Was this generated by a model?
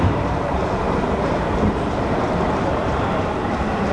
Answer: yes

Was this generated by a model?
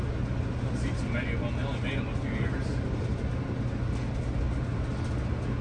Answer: no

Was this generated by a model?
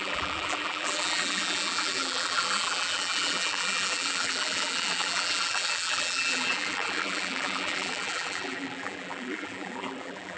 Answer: yes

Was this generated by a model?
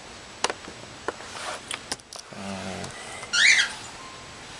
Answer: no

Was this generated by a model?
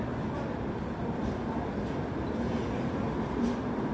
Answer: yes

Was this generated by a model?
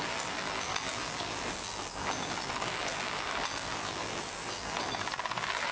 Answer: yes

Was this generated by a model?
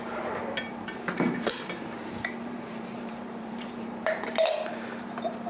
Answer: yes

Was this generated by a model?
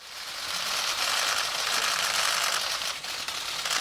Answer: yes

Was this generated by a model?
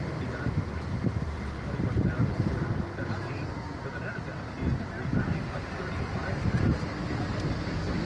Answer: no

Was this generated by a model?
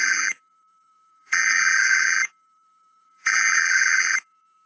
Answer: yes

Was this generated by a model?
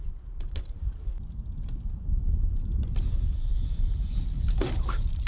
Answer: yes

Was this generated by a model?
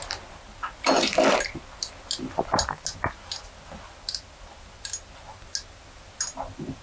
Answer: no